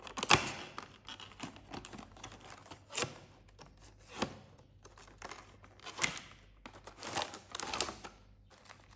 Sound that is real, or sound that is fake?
real